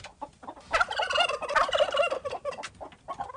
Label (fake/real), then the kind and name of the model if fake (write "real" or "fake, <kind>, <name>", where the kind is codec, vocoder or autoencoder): fake, vocoder, BigVGAN v2